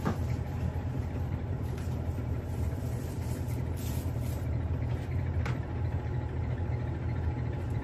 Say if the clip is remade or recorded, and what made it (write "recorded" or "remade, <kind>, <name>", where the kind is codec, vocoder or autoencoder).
remade, vocoder, BigVGAN v2